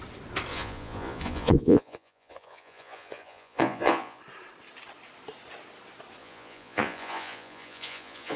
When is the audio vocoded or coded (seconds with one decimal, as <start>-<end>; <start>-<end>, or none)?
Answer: 0.5-4.2; 6.2-8.4